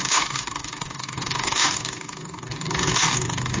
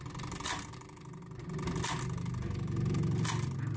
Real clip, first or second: second